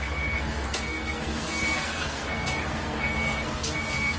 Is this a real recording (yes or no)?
no